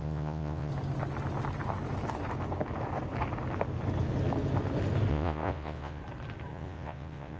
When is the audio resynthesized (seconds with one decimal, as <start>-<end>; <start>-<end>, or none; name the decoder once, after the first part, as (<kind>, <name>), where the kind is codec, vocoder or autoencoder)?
0.0-0.7 (vocoder, Vocos); 5.1-6.0; 6.5-7.4